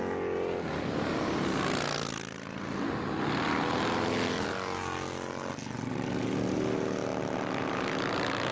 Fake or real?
real